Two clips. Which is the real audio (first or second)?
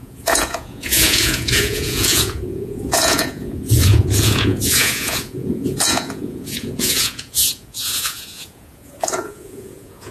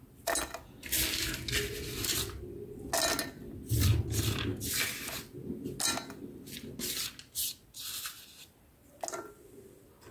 second